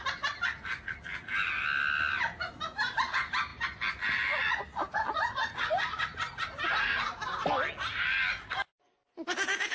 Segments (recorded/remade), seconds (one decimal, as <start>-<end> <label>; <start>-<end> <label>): 0.0-9.7 recorded